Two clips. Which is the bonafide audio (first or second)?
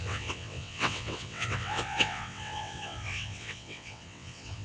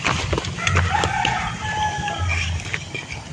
second